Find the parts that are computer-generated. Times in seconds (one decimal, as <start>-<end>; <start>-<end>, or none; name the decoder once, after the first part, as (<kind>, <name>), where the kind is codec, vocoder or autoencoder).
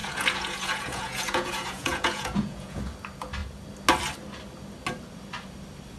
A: 0.0-2.8 (vocoder, Vocos)